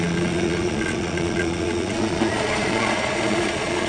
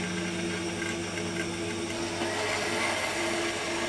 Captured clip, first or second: second